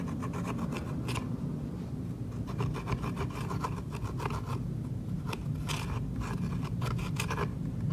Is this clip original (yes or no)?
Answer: yes